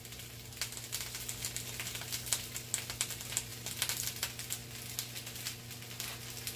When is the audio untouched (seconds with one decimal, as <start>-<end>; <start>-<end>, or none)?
0.0-6.6